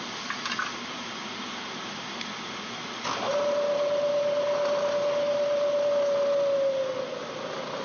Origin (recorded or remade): recorded